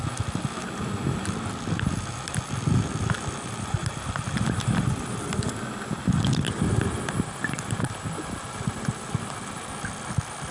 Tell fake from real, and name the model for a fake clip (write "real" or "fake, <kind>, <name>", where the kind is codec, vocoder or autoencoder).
real